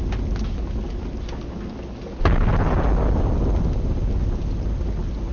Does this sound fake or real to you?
real